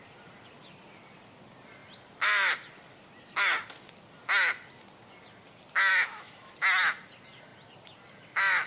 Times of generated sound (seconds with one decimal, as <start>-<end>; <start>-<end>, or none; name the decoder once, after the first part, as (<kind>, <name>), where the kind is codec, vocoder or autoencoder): 5.9-6.5 (autoencoder, DAC-VAE)

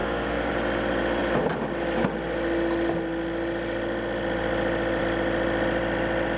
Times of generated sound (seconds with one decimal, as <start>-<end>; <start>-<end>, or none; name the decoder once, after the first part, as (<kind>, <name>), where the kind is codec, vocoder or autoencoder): 0.0-0.5 (codec, DAC)